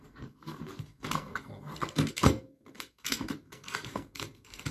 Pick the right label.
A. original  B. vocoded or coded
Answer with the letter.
B